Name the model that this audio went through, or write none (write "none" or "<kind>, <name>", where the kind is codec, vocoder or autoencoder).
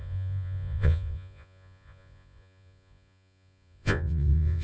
vocoder, Vocos